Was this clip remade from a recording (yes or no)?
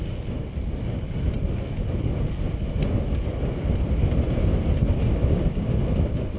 no